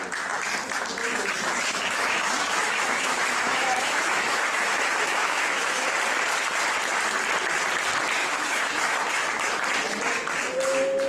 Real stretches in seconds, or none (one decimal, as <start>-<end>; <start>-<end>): 0.0-1.0; 5.9-8.2; 9.5-11.1